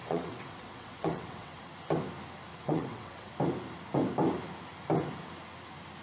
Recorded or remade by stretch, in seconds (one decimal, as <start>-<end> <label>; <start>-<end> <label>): 0.0-1.6 remade; 1.6-2.5 recorded; 2.5-3.3 remade; 3.3-6.0 recorded